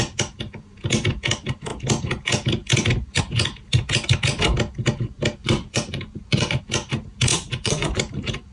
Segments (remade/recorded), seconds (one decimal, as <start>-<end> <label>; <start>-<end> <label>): 0.0-5.4 recorded; 5.4-6.6 remade; 6.6-7.3 recorded; 7.3-8.0 remade; 8.0-8.5 recorded